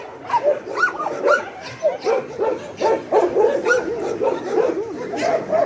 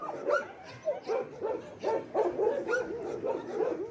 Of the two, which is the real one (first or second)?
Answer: second